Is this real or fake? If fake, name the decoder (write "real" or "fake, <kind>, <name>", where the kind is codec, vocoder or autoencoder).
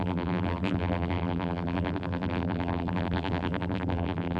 fake, vocoder, BigVGAN v2